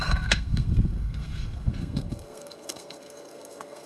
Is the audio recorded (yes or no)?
no